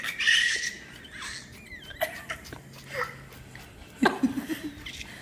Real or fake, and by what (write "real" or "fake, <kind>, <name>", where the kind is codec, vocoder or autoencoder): real